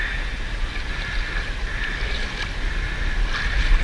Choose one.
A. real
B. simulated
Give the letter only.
A